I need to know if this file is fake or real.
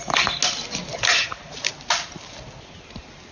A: real